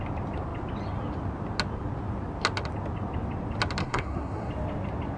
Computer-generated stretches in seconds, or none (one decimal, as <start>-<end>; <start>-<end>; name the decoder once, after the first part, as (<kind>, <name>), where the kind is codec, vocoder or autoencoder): 3.8-4.5 (codec, SNAC)